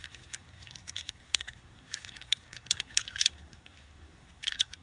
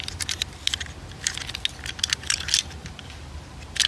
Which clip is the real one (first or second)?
second